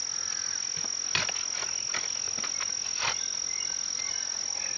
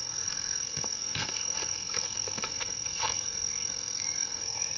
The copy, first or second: second